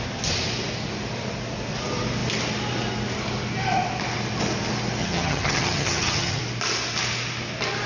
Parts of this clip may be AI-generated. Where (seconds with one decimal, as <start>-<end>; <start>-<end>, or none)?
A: 5.0-6.4